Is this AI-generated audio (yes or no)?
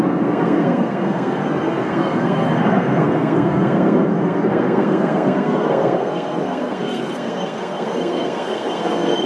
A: yes